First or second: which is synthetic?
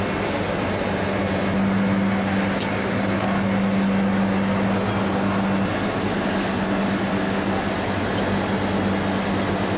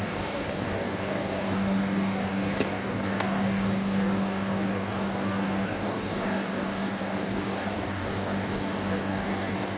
second